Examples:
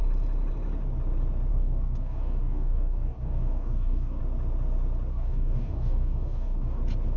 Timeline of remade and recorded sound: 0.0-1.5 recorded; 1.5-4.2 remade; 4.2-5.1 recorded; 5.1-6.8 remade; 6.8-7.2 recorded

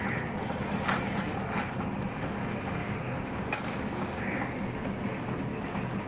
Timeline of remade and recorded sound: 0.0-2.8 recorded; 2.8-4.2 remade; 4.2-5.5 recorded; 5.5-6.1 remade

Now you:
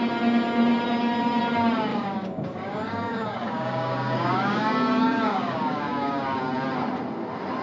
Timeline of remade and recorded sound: 0.0-1.9 recorded; 1.9-6.4 remade; 6.4-7.6 recorded